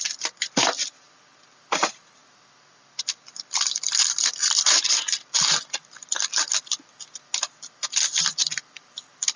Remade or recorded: remade